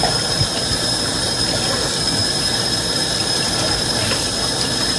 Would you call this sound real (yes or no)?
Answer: yes